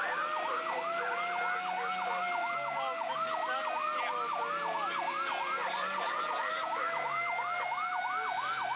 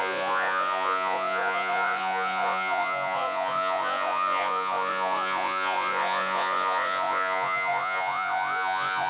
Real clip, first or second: first